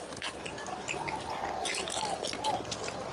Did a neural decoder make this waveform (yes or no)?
no